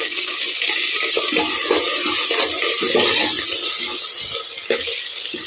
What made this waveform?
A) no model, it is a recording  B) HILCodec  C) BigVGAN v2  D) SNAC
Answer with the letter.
A